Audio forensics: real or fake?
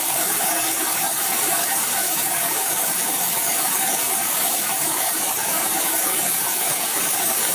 fake